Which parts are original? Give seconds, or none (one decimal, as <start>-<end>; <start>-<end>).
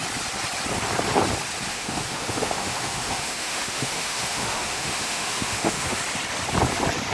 0.0-1.7; 6.0-7.1